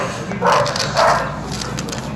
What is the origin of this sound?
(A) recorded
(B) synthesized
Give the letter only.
A